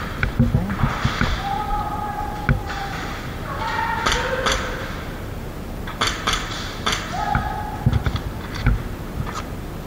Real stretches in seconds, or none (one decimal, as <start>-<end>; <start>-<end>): 0.0-9.9